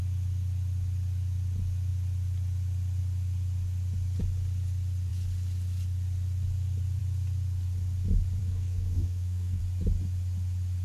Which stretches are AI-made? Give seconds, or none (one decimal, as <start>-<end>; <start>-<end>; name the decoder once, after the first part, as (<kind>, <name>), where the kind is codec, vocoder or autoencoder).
8.4-9.6 (codec, SNAC)